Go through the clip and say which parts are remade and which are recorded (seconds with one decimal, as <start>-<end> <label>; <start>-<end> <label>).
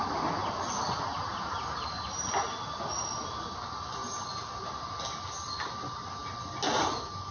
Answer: 0.0-7.3 recorded